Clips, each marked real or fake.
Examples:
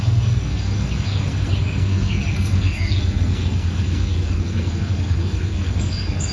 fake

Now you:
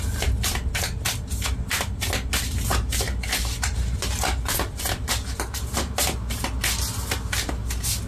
real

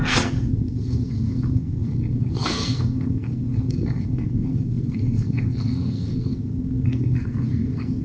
fake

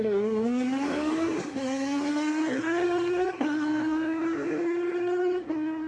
fake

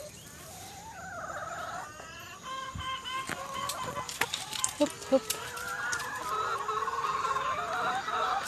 real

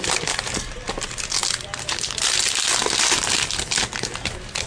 real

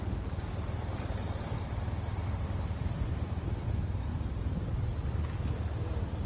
real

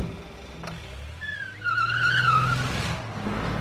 real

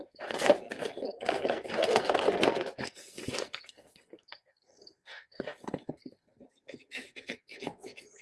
fake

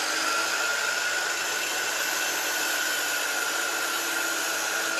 real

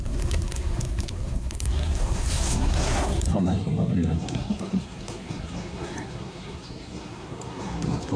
fake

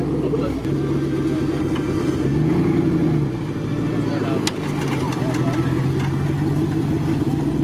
real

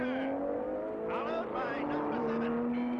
real